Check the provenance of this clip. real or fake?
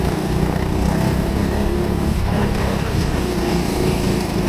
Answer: fake